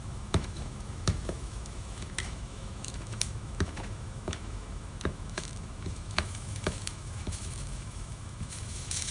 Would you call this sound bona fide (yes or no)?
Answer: no